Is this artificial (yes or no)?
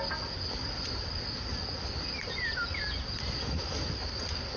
no